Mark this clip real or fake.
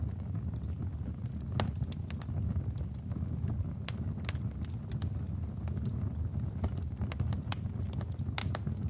real